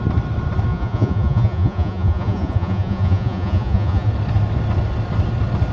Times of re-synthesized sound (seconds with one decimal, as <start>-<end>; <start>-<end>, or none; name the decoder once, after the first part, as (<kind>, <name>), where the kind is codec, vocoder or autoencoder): 0.7-4.1 (vocoder, Vocos)